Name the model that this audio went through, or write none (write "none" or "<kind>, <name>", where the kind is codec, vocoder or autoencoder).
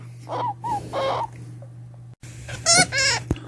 none